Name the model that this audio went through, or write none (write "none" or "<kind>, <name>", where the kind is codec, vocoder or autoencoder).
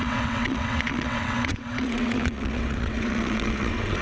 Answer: vocoder, WaveNeXt